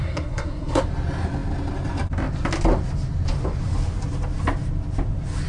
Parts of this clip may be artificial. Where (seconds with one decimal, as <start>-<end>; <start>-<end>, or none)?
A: 0.0-0.8